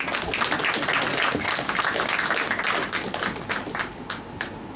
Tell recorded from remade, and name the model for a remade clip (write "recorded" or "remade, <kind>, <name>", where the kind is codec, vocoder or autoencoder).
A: recorded